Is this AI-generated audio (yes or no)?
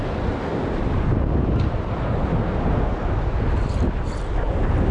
no